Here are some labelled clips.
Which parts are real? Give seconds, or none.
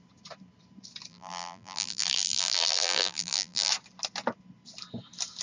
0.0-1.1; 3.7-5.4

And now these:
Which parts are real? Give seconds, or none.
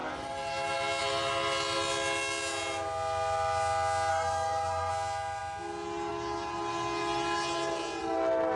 0.0-4.1; 4.9-8.6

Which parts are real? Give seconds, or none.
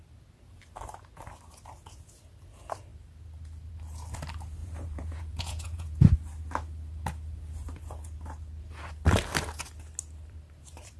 0.0-4.6; 6.1-11.0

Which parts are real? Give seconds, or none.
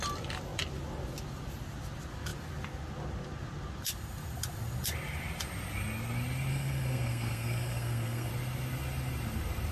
0.0-6.5; 8.3-9.7